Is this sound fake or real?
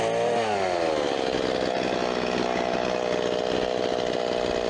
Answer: real